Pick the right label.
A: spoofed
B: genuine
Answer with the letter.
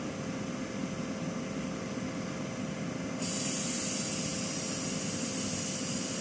B